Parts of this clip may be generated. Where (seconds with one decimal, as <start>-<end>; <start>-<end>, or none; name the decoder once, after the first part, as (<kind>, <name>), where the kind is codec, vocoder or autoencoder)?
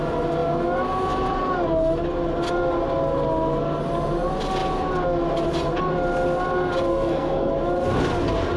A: 6.9-7.5 (codec, SNAC)